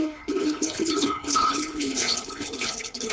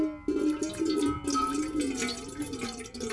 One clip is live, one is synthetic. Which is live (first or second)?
second